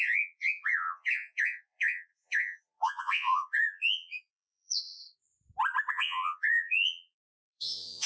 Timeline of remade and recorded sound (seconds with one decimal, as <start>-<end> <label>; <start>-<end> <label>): 0.0-5.0 remade; 5.0-5.9 recorded; 5.9-8.1 remade